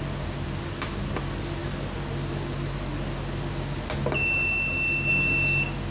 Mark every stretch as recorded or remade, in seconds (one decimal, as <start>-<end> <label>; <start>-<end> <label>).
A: 0.0-5.9 recorded